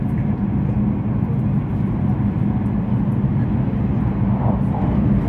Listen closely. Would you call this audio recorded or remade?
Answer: recorded